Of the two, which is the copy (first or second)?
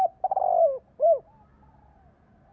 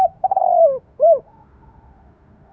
second